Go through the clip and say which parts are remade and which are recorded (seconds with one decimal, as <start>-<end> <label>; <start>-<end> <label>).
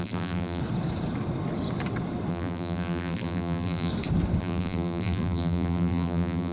0.0-0.6 remade; 0.6-2.3 recorded; 2.3-3.9 remade; 3.9-4.4 recorded; 4.4-6.5 remade